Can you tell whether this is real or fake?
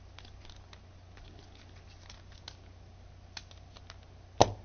real